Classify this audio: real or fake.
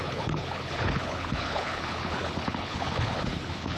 fake